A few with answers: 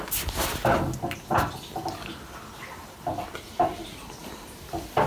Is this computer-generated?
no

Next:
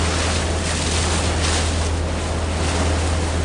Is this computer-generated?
no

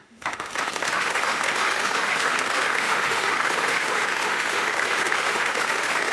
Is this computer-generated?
yes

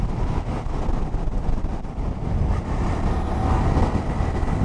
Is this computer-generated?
no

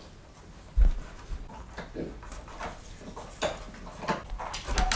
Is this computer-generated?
no